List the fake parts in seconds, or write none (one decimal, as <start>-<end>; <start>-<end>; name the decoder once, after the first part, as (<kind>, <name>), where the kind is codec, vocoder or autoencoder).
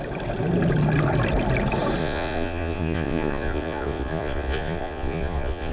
2.0-5.7 (vocoder, Vocos)